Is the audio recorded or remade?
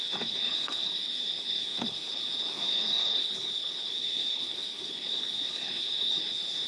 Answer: remade